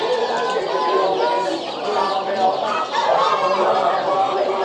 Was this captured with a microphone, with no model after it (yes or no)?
yes